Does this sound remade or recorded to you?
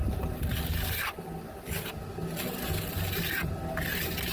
recorded